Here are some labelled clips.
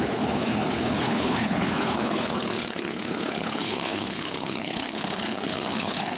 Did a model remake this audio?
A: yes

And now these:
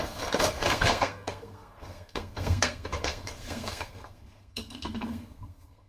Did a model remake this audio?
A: yes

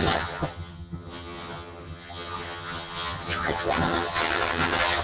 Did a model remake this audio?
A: yes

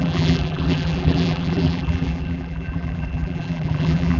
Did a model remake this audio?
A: yes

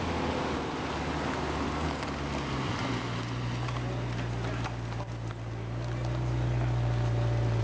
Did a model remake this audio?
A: no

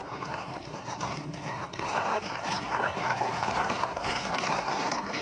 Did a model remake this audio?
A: yes